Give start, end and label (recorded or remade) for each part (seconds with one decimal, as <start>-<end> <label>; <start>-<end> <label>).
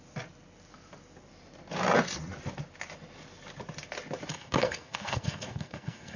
0.0-4.3 recorded; 4.3-6.2 remade